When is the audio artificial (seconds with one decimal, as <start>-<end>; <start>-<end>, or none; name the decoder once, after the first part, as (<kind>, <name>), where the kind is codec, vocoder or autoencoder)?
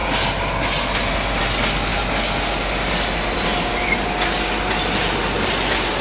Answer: none